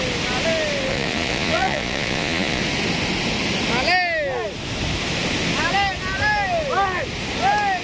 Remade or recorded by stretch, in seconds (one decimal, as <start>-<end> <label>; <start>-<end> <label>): 0.0-0.9 recorded; 0.9-2.6 remade; 2.6-7.8 recorded